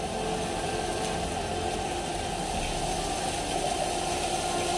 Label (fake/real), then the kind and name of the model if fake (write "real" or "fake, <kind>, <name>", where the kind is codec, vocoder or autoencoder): real